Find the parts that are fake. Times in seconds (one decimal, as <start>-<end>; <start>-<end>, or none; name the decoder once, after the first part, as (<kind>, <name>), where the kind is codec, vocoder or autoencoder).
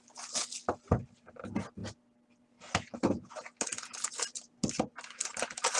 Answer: none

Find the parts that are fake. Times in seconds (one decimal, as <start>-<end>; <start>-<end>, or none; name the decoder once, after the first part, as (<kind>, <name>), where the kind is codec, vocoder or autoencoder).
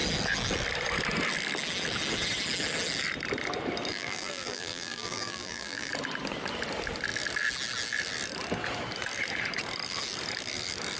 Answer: 3.9-5.9 (vocoder, BigVGAN v2)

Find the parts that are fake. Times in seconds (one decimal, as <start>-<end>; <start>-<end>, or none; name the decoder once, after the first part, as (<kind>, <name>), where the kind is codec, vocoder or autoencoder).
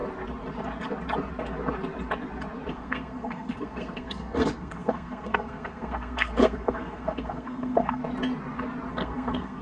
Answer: 2.7-8.0 (codec, SNAC); 8.9-9.6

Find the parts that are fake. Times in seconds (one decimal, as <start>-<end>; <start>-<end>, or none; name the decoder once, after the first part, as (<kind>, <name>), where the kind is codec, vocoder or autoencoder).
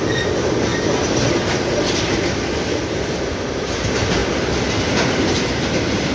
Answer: none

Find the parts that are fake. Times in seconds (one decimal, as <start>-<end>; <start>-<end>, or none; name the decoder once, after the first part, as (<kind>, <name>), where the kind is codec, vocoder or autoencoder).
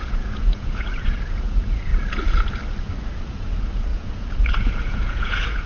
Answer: 0.0-1.9 (vocoder, Vocos); 3.1-5.7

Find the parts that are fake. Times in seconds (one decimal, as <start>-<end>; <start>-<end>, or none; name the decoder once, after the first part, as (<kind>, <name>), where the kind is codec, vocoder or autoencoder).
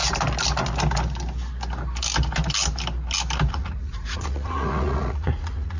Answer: 3.5-5.8 (vocoder, Vocos)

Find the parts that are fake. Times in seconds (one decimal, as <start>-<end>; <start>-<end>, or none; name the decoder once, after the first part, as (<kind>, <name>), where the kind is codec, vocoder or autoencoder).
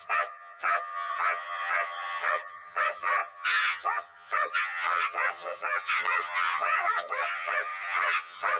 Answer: 0.0-8.6 (vocoder, HiFi-GAN)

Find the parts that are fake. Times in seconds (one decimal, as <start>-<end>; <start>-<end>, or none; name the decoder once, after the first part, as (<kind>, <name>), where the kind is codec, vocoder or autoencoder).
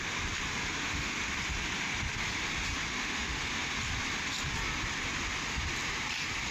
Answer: 0.8-1.3 (autoencoder, DAC-VAE); 2.9-3.5